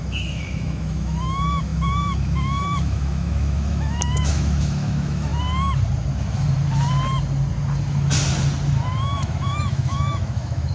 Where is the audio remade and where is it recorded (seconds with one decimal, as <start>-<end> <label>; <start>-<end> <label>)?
0.0-5.3 remade; 5.3-9.0 recorded; 9.0-10.7 remade